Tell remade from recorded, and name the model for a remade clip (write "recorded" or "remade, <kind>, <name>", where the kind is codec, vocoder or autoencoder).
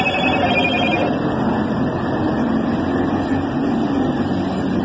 recorded